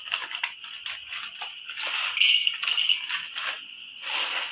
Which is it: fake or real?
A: real